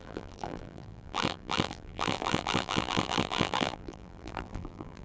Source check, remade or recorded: remade